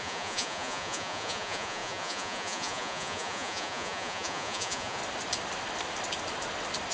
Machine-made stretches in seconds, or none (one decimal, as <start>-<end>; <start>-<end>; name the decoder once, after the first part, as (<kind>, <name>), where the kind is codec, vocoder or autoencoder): 0.0-5.0 (vocoder, Vocos)